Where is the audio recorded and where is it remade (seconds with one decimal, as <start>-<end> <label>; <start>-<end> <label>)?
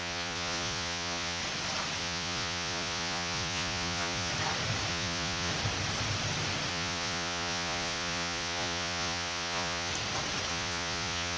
0.0-1.4 remade; 1.4-2.0 recorded; 2.0-4.3 remade; 4.3-4.9 recorded; 4.9-5.5 remade; 5.5-6.7 recorded; 6.7-9.9 remade; 9.9-10.5 recorded; 10.5-11.4 remade